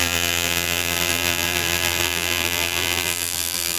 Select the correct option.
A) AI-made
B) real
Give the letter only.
A